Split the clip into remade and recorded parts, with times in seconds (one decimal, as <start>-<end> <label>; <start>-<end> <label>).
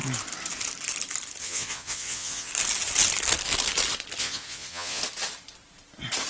0.0-1.4 recorded; 1.4-2.5 remade; 2.5-4.2 recorded; 4.2-5.0 remade; 5.0-6.3 recorded